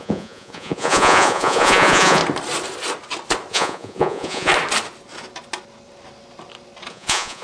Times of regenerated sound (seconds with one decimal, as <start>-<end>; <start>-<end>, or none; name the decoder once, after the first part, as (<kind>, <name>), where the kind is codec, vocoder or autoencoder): 0.0-2.2 (vocoder, Vocos); 3.5-4.5; 6.9-7.4